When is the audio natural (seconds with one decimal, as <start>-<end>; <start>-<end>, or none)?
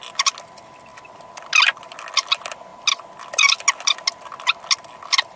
0.0-5.4